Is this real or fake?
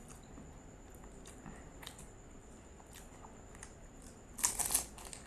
real